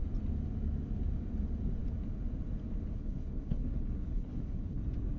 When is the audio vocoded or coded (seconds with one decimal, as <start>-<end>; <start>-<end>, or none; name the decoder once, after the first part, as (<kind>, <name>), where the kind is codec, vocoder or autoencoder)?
2.9-4.8 (codec, HILCodec)

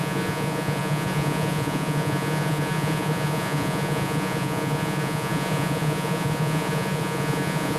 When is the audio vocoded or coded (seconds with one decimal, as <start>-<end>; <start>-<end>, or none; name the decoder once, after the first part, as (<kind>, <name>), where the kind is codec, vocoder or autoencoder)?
0.0-7.8 (vocoder, Vocos)

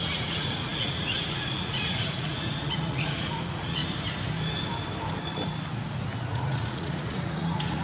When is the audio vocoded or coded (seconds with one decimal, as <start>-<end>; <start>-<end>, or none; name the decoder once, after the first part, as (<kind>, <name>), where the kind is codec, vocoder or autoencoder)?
0.0-3.8 (vocoder, Vocos); 6.3-7.8

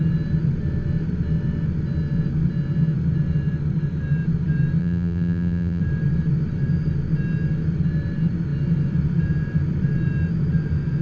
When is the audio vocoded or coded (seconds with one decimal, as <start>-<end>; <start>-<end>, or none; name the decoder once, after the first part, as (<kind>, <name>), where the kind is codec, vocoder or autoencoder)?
4.8-5.8 (vocoder, BigVGAN v2)

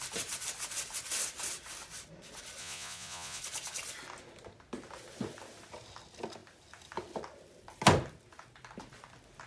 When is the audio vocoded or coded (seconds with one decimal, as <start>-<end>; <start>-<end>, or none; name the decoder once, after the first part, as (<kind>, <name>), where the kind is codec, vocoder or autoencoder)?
2.6-3.4 (vocoder, Vocos)

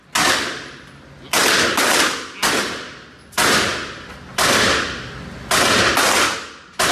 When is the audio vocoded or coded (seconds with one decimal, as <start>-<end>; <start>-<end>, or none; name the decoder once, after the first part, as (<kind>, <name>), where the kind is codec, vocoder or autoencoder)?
none

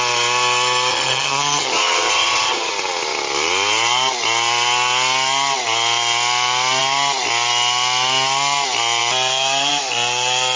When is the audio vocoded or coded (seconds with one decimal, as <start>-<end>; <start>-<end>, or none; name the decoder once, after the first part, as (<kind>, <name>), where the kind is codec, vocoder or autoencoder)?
0.9-2.7 (vocoder, HiFi-GAN)